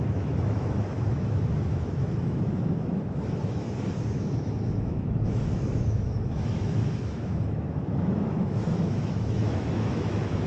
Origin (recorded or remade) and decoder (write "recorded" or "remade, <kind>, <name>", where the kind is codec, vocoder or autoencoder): remade, autoencoder, DAC-VAE